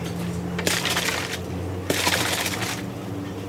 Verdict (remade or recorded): recorded